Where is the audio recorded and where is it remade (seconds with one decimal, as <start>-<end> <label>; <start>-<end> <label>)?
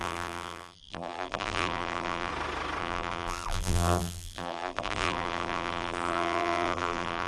0.0-2.3 remade; 2.3-2.8 recorded; 2.8-7.3 remade